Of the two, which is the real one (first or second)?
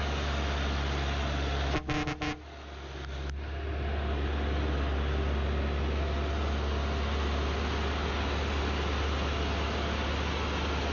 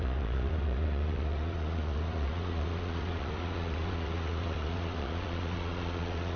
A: first